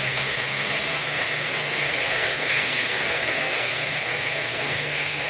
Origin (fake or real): fake